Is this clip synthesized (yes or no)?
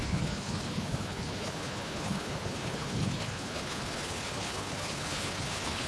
yes